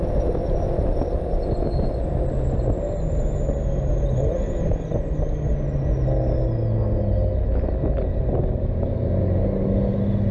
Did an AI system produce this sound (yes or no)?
no